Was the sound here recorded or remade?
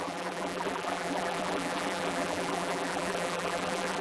remade